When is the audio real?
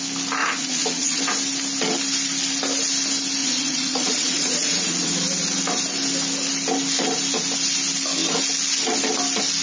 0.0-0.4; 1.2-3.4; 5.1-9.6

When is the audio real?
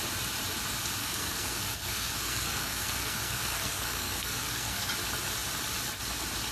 0.0-1.0; 4.9-6.5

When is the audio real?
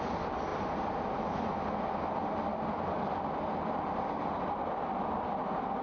0.0-5.8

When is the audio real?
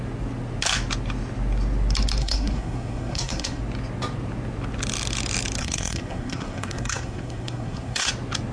0.0-2.2; 3.6-5.6; 8.1-8.5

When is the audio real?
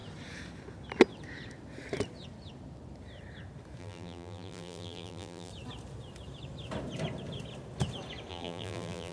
0.0-3.8; 5.5-8.3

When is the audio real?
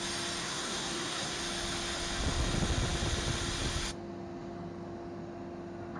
0.0-0.4; 1.4-6.0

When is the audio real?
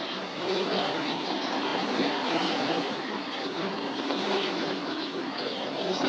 none